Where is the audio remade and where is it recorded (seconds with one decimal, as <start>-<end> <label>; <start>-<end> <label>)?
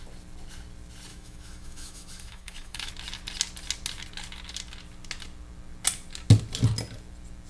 0.0-1.1 recorded; 1.1-2.9 remade; 2.9-7.5 recorded